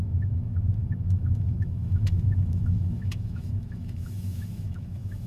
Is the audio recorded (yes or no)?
no